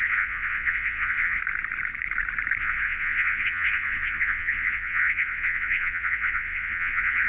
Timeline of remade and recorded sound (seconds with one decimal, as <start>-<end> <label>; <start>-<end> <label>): 0.0-1.4 remade; 1.4-2.6 recorded; 2.6-7.3 remade